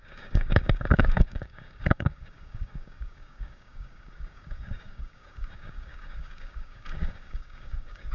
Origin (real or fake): fake